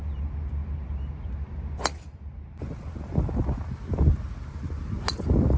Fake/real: real